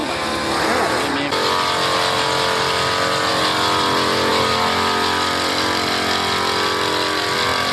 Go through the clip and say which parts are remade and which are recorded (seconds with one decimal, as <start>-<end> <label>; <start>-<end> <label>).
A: 0.0-7.7 recorded